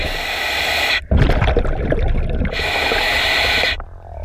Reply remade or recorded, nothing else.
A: recorded